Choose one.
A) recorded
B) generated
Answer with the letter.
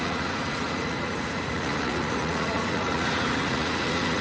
B